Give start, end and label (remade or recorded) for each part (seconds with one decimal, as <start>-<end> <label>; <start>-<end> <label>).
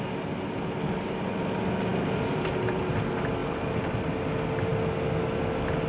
0.0-1.9 recorded; 1.9-2.8 remade; 2.8-3.4 recorded; 3.4-4.2 remade; 4.2-5.9 recorded